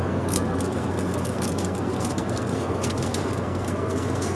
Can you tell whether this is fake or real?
fake